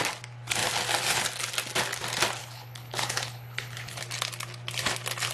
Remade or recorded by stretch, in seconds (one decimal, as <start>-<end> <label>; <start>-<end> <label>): 0.0-2.4 recorded; 2.4-4.0 remade; 4.0-5.3 recorded